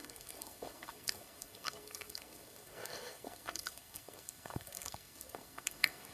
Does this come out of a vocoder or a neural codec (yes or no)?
yes